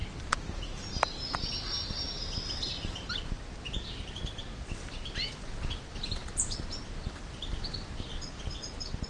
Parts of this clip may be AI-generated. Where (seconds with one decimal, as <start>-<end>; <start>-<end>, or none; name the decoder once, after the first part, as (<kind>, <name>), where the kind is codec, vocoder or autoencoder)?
none